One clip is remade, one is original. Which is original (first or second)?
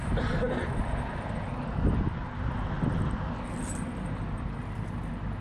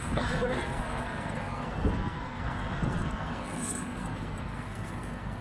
first